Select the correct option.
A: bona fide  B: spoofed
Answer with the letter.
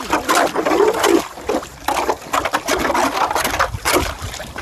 A